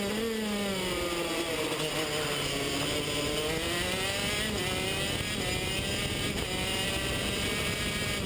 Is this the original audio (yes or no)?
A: yes